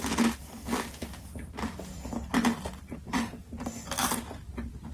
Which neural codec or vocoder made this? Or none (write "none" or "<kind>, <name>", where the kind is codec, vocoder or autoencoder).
none